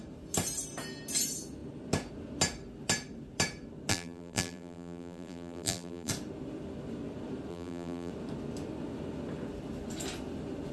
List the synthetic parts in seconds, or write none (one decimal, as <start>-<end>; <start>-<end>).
3.9-6.1; 7.5-8.1